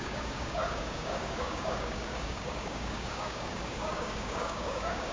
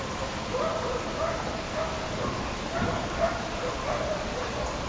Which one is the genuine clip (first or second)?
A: second